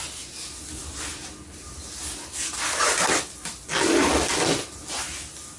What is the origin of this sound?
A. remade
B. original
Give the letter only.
B